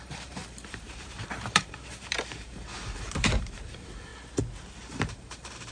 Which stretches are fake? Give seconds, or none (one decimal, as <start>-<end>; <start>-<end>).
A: 0.0-4.1; 4.6-5.7

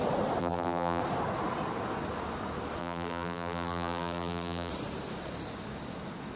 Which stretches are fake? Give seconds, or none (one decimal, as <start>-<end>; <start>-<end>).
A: 0.4-1.0; 2.8-4.7